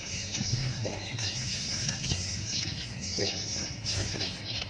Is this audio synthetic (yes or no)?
yes